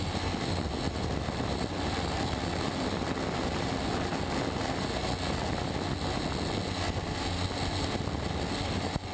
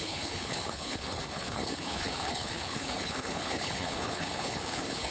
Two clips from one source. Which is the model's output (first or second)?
second